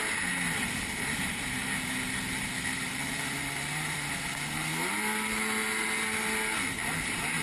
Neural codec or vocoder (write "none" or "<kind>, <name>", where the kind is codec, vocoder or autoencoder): none